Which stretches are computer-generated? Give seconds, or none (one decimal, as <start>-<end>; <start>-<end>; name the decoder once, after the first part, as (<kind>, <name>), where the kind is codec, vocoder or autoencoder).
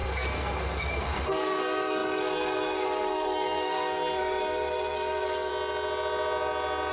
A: 0.0-5.5 (codec, SNAC)